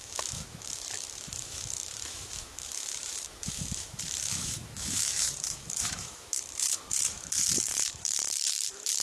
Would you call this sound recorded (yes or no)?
no